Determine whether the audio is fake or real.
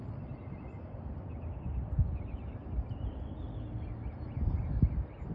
real